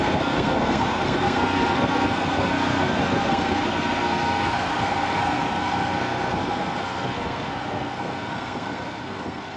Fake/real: fake